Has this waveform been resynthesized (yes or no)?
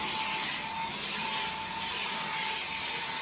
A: no